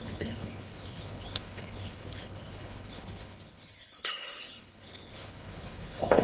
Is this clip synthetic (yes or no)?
yes